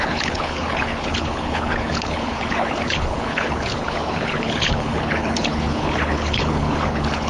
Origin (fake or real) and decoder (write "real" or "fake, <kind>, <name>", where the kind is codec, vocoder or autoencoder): fake, codec, HILCodec